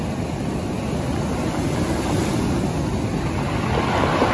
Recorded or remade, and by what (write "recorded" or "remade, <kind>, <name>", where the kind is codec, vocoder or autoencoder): recorded